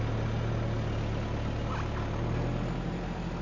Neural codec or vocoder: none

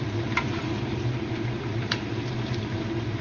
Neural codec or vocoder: vocoder, BigVGAN v2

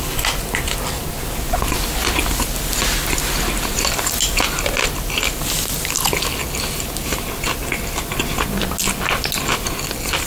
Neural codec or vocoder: none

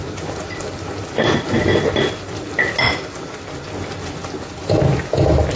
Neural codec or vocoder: none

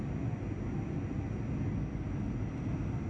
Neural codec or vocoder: none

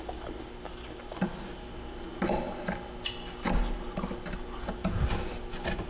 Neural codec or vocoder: none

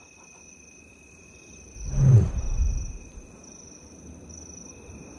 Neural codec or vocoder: vocoder, BigVGAN v2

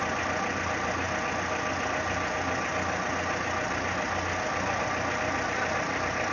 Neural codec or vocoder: none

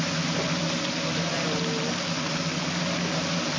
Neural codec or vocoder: none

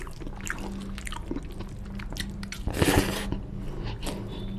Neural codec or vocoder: none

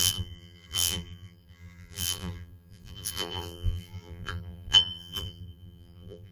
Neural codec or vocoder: vocoder, BigVGAN v2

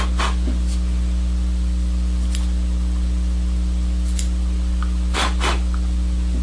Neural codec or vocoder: none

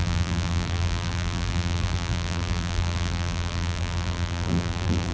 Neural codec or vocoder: vocoder, BigVGAN v2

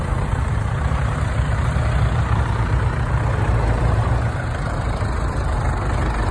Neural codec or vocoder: vocoder, BigVGAN v2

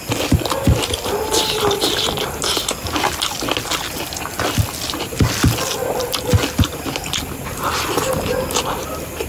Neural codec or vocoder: none